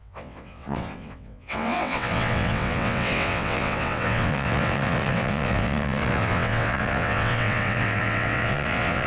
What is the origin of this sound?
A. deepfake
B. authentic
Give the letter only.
A